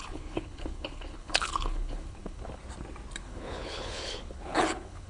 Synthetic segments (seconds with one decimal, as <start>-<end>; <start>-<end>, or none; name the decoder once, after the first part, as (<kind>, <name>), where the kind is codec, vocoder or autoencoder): 0.0-2.6 (codec, HILCodec); 3.2-5.1